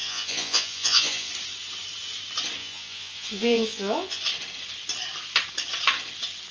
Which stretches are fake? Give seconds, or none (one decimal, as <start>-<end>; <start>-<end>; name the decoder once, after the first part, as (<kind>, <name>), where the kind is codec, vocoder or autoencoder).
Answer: 0.0-1.3 (vocoder, Vocos); 2.6-4.2